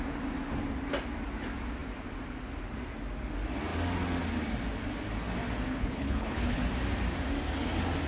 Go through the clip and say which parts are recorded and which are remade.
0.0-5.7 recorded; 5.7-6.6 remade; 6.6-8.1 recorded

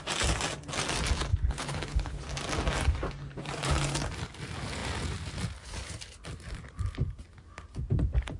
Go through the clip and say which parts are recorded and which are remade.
0.0-1.3 recorded; 1.3-2.2 remade; 2.2-8.4 recorded

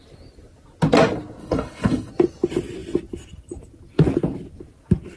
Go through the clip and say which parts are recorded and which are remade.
0.0-1.4 recorded; 1.4-2.1 remade; 2.1-5.2 recorded

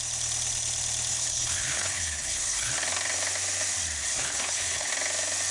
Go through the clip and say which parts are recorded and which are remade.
0.0-1.1 recorded; 1.1-2.7 remade; 2.7-4.0 recorded; 4.0-4.9 remade; 4.9-5.5 recorded

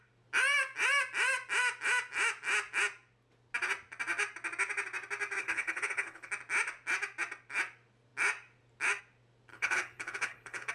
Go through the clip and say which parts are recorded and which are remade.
0.0-5.4 recorded; 5.4-6.3 remade; 6.3-9.5 recorded; 9.5-10.7 remade

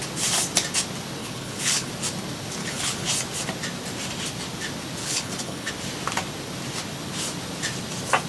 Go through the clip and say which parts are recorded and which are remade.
0.0-1.2 recorded; 1.2-1.9 remade; 1.9-2.6 recorded; 2.6-3.1 remade; 3.1-5.0 recorded; 5.0-5.7 remade; 5.7-8.3 recorded

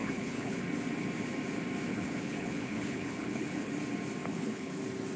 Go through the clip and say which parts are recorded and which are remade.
0.0-0.6 remade; 0.6-1.9 recorded; 1.9-3.7 remade; 3.7-4.3 recorded; 4.3-4.8 remade; 4.8-5.2 recorded

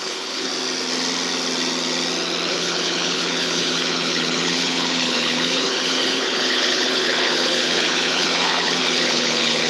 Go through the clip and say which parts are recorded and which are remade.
0.0-0.5 remade; 0.5-2.5 recorded; 2.5-9.7 remade